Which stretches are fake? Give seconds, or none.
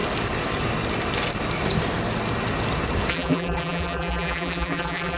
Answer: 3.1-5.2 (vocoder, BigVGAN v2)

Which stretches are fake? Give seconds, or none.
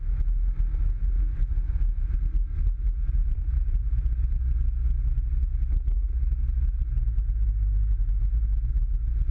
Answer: 3.2-4.4 (vocoder, BigVGAN v2)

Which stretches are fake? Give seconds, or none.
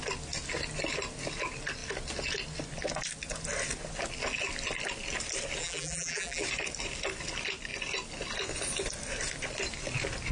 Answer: 5.6-6.4 (vocoder, BigVGAN v2)